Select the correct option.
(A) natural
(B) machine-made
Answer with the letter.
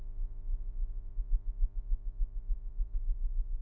A